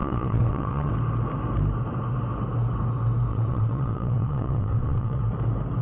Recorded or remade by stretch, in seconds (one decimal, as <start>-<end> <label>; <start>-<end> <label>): 0.0-0.9 remade; 0.9-3.3 recorded; 3.3-5.2 remade; 5.2-5.8 recorded